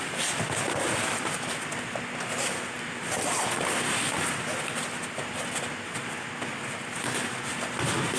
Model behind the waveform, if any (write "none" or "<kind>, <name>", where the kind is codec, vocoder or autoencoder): none